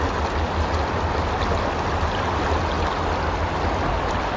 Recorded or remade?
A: recorded